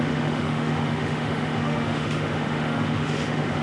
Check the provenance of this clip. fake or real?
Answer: fake